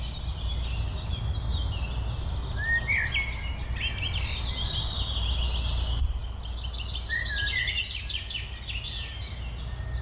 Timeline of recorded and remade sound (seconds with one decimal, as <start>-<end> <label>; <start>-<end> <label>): 0.0-10.0 recorded